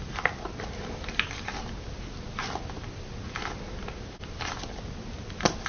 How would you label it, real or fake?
real